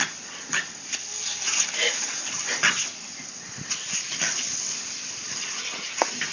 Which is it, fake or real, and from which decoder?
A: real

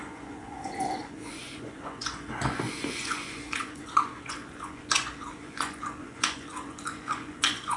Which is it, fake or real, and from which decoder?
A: fake, vocoder, Vocos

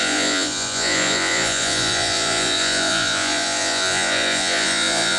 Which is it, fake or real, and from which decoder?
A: fake, vocoder, Vocos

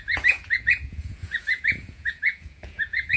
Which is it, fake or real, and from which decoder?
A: fake, vocoder, Vocos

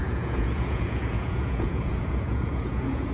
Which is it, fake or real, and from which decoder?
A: fake, vocoder, Vocos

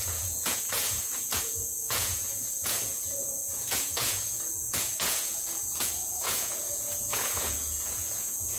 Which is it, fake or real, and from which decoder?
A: fake, vocoder, Vocos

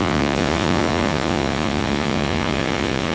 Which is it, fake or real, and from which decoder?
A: fake, vocoder, Vocos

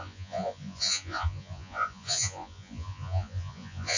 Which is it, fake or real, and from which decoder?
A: fake, vocoder, Vocos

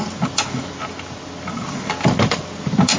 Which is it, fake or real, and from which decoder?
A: real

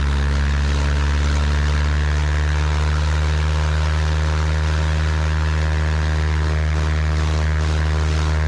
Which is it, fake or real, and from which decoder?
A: real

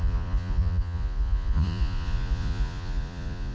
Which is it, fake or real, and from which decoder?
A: fake, vocoder, Vocos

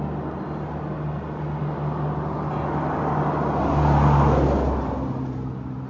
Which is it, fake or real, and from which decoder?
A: real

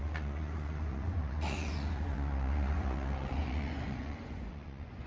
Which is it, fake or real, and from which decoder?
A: fake, vocoder, Vocos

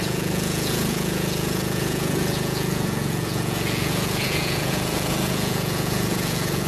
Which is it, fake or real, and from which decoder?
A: fake, vocoder, Vocos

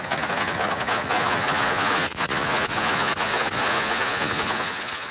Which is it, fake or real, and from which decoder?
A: fake, vocoder, Vocos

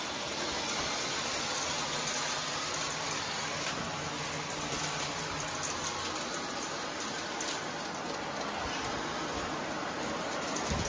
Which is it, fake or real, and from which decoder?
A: real